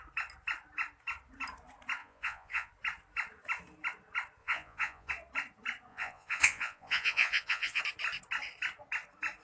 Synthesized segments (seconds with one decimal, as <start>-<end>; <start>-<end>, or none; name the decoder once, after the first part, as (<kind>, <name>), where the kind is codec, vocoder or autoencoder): 2.0-2.7 (vocoder, Vocos); 4.4-5.1; 5.9-7.8